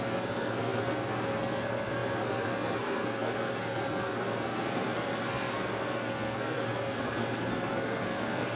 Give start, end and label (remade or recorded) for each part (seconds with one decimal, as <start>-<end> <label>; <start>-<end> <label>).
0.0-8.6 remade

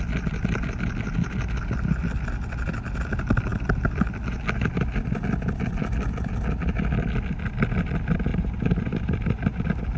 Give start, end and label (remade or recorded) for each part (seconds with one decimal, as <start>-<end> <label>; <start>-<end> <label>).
0.0-8.3 recorded; 8.3-9.6 remade; 9.6-10.0 recorded

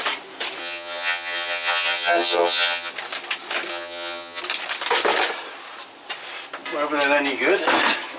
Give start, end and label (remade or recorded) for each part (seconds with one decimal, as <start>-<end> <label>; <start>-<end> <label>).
0.0-0.6 recorded; 0.6-2.9 remade; 2.9-3.7 recorded; 3.7-4.4 remade; 4.4-8.2 recorded

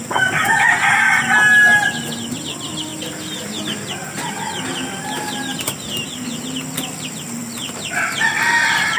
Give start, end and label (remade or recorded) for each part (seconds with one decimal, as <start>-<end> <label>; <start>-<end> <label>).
0.0-2.9 recorded; 2.9-4.3 remade; 4.3-9.0 recorded

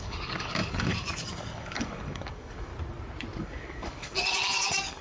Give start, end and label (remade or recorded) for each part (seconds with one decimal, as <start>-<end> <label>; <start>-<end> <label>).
0.0-2.7 remade; 2.7-3.4 recorded; 3.4-5.0 remade